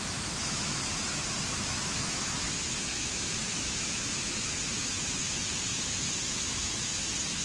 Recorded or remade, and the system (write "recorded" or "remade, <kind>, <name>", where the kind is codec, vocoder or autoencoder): remade, autoencoder, DAC-VAE